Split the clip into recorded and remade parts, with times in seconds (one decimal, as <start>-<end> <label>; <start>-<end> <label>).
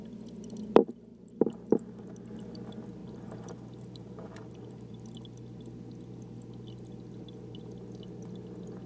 0.0-1.1 recorded; 1.1-1.9 remade; 1.9-3.0 recorded; 3.0-5.0 remade; 5.0-8.9 recorded